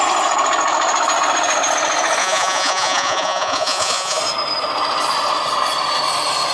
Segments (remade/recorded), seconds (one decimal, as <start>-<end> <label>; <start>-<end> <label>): 0.0-2.2 recorded; 2.2-4.2 remade; 4.2-6.5 recorded